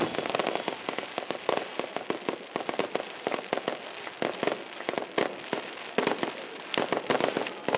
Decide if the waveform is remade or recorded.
recorded